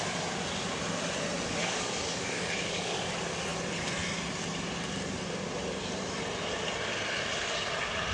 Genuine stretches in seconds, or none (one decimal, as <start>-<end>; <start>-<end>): 0.0-1.6; 3.1-8.1